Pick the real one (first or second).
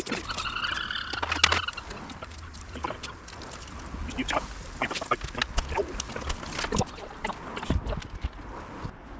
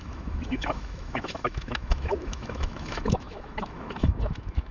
first